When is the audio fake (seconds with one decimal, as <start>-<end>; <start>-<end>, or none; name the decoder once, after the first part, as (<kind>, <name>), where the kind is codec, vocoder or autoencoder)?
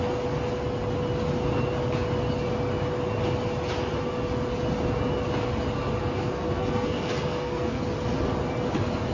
6.0-7.8 (codec, SNAC)